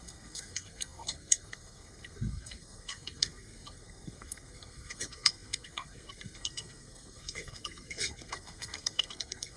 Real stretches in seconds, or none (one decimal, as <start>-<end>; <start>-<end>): none